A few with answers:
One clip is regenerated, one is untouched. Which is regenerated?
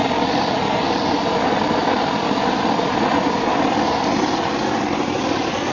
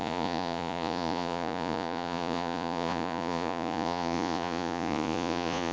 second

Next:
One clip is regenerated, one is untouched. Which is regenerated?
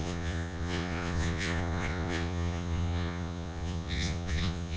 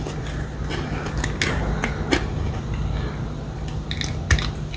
first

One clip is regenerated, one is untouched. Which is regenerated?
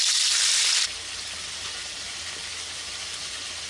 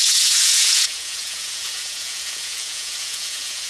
second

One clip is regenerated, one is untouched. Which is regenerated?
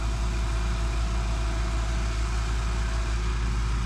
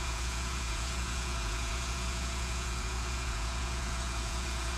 second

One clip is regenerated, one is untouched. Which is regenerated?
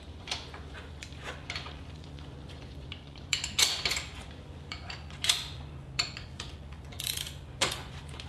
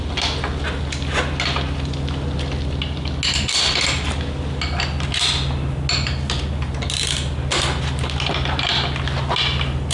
first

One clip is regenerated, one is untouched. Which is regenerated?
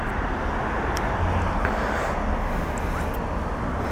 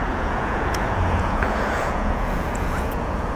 second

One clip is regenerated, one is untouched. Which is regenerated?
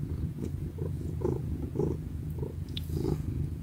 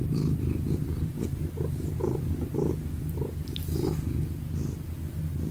first